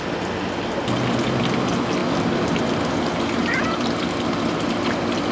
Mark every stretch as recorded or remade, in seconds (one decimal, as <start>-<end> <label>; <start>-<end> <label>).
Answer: 0.0-2.0 recorded; 2.0-5.3 remade